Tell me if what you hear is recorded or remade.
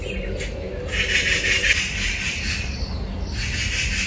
recorded